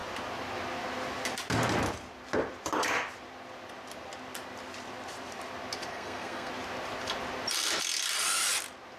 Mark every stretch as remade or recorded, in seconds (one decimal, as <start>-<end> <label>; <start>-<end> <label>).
0.0-5.9 recorded; 5.9-6.5 remade; 6.5-9.0 recorded